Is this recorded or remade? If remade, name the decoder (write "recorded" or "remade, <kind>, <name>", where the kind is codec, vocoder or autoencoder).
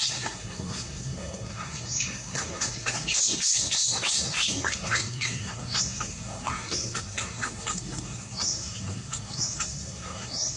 remade, codec, SNAC